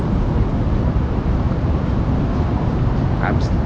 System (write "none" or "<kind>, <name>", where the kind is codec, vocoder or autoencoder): vocoder, BigVGAN v2